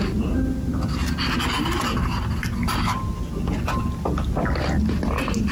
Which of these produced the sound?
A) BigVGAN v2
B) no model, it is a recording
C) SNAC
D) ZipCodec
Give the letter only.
B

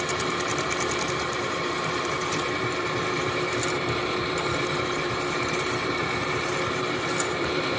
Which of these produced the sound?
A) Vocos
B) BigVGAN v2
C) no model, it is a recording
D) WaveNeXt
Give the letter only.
B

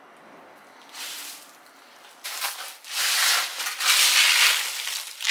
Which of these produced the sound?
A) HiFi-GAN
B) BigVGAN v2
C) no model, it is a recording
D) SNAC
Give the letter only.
C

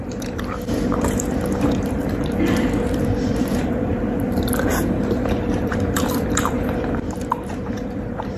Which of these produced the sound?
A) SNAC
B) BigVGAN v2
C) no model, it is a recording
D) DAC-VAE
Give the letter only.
B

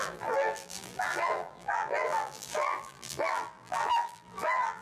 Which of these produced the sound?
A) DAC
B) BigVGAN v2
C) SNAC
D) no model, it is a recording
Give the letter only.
B